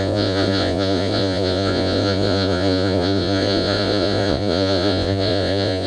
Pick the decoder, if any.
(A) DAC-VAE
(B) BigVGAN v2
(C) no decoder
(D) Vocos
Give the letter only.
D